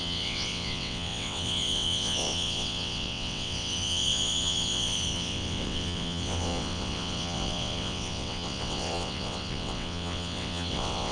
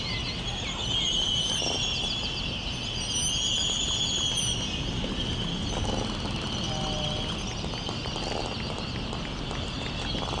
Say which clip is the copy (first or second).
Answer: first